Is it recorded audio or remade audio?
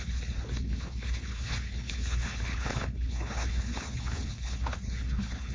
remade